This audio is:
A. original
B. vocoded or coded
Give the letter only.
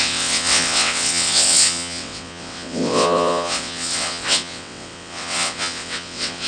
B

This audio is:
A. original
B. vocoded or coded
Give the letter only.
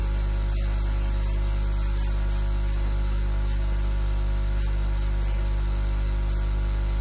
A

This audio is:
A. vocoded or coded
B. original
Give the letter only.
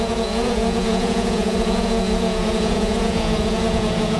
A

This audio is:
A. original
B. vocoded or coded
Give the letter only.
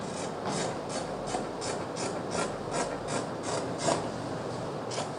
A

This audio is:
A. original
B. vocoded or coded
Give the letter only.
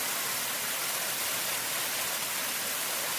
A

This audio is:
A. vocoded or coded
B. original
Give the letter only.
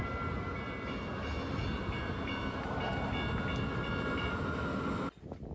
B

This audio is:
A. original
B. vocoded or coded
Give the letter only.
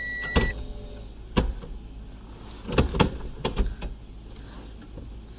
A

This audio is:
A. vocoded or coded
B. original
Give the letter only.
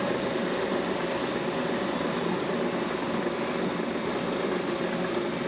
B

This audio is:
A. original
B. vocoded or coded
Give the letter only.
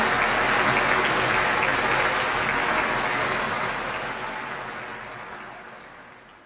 A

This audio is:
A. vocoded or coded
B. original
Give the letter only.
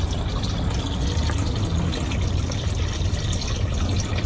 B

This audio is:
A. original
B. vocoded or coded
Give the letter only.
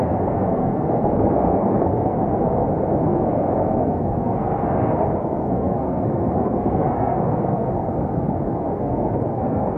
B